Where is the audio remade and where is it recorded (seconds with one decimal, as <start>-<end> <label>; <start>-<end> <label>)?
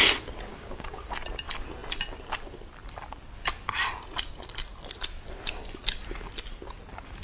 0.0-0.5 recorded; 0.5-1.0 remade; 1.0-7.2 recorded